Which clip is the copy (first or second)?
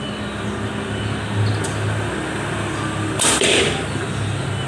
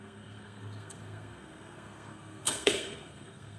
second